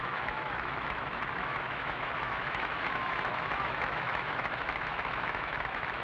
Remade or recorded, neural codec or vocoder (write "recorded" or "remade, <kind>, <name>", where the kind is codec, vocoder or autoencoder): remade, autoencoder, DAC-VAE